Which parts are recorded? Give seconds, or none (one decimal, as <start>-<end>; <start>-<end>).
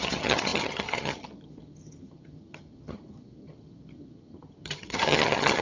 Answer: none